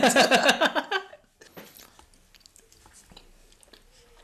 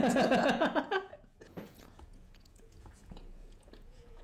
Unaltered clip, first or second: first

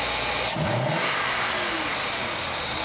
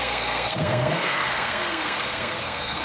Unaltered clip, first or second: first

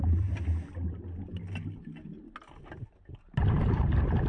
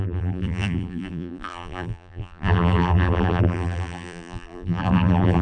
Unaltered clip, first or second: first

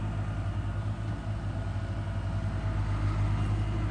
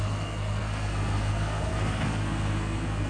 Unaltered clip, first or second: first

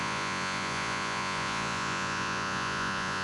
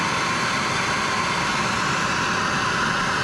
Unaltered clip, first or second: second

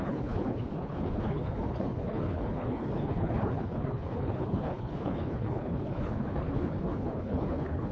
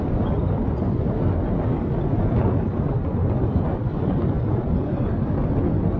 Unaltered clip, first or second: second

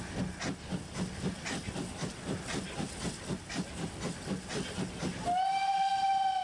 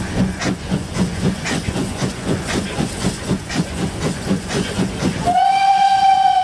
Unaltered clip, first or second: first